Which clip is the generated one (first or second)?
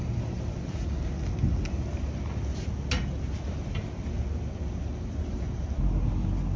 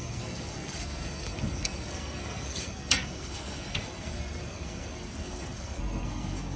second